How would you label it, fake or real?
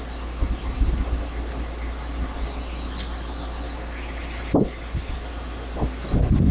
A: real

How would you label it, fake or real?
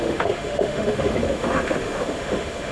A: fake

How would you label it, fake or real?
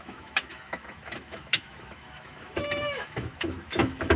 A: fake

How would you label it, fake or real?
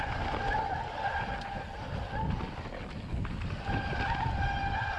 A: real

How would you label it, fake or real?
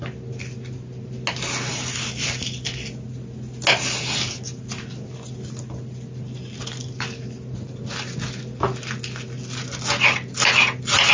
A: real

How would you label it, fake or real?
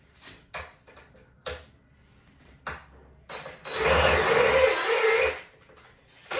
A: real